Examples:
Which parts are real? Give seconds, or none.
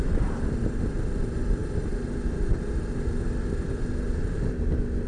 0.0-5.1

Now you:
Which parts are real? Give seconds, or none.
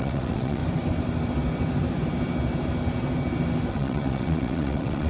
0.6-3.7